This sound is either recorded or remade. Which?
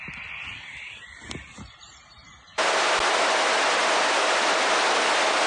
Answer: recorded